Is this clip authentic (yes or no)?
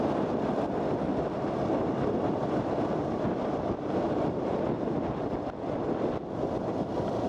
yes